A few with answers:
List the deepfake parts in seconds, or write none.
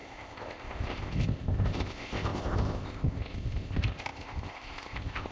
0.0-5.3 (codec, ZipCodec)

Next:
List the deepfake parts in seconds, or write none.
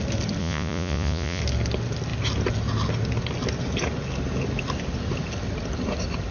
0.4-1.4 (vocoder, Vocos)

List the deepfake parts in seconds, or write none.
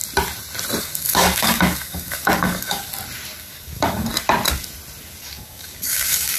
0.8-2.9 (codec, DAC); 3.4-4.1; 5.2-6.4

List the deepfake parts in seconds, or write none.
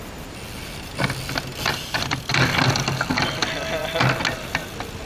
1.7-2.3 (vocoder, BigVGAN v2)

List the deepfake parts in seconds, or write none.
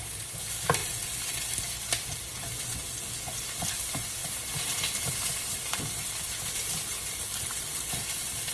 0.8-2.9 (vocoder, BigVGAN v2); 4.2-8.5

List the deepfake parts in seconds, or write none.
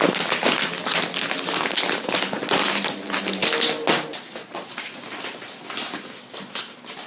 4.4-5.0 (vocoder, Vocos)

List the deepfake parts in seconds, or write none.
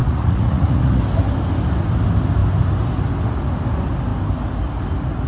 0.0-1.0 (vocoder, Vocos)